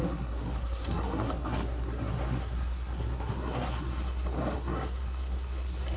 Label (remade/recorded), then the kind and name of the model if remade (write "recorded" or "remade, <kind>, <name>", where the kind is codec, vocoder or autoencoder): remade, codec, SNAC